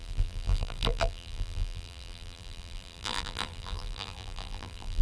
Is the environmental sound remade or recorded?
remade